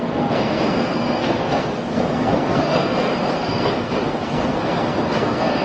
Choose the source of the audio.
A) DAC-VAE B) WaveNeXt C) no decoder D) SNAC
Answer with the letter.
D